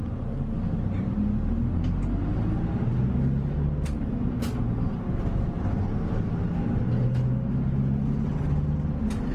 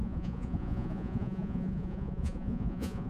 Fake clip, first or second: second